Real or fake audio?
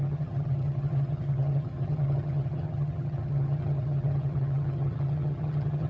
fake